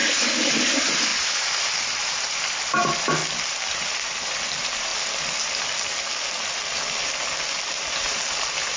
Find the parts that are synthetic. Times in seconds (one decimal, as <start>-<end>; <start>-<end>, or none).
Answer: 0.0-3.2; 3.7-4.9; 7.9-8.8